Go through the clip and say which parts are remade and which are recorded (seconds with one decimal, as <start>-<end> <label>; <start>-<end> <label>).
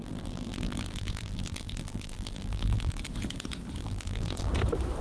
0.0-3.0 remade; 3.0-3.8 recorded; 3.8-4.5 remade; 4.5-5.0 recorded